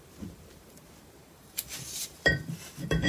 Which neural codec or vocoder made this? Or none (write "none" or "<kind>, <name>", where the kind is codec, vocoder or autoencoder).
vocoder, BigVGAN v2